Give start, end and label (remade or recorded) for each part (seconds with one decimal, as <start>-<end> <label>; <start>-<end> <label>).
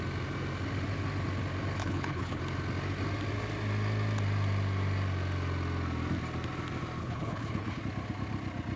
0.0-1.8 recorded; 1.8-2.4 remade; 2.4-7.0 recorded; 7.0-7.8 remade; 7.8-8.8 recorded